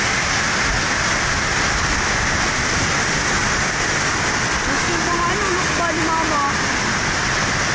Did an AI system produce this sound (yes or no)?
no